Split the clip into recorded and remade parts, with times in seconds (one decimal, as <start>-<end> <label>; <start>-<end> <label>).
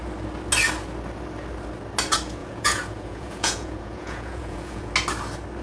0.0-2.4 recorded; 2.4-4.9 remade; 4.9-5.6 recorded